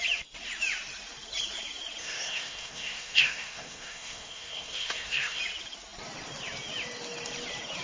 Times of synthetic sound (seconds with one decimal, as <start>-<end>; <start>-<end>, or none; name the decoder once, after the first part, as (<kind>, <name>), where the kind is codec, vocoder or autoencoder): 2.0-5.4 (codec, SNAC)